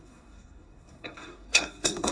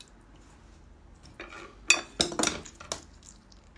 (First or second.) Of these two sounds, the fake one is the first